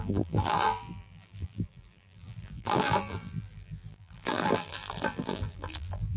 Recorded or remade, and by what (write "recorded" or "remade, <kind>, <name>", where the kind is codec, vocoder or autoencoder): remade, vocoder, BigVGAN v2